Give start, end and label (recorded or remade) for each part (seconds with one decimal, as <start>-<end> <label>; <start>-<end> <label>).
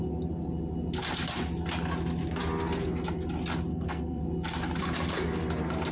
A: 0.0-3.7 recorded; 3.7-4.2 remade; 4.2-5.9 recorded